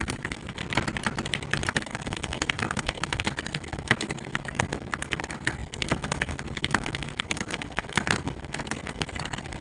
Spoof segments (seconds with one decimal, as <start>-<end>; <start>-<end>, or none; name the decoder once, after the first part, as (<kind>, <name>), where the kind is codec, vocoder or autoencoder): 0.0-0.6 (codec, SNAC); 1.7-9.6